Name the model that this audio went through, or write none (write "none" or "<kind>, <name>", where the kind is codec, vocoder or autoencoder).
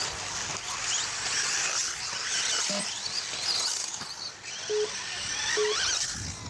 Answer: none